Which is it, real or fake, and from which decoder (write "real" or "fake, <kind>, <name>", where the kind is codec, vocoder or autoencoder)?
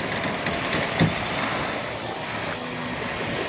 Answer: real